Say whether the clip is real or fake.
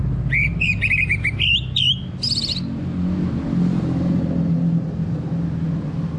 real